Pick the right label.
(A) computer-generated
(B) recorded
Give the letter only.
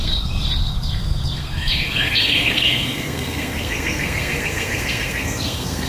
A